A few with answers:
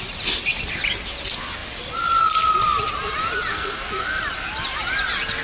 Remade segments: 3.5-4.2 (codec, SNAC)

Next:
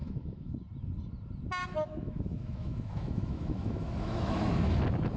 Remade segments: 0.0-0.5 (autoencoder, DAC-VAE); 1.6-4.7

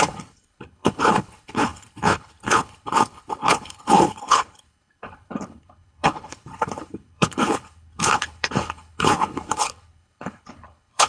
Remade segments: 0.0-11.1 (codec, HILCodec)

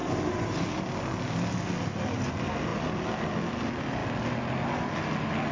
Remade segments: none